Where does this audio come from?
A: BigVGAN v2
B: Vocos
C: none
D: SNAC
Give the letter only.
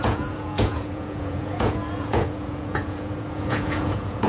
B